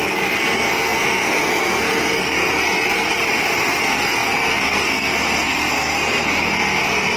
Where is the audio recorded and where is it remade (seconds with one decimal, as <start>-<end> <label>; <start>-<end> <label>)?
0.0-3.2 remade; 3.2-3.8 recorded; 3.8-7.2 remade

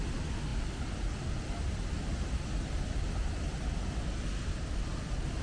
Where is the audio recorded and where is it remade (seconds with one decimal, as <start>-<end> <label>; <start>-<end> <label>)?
0.0-5.4 recorded